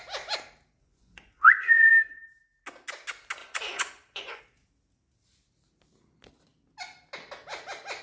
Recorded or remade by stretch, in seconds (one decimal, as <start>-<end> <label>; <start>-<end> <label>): 0.0-0.8 recorded; 0.8-1.9 remade; 1.9-3.4 recorded; 3.4-4.4 remade; 4.4-8.0 recorded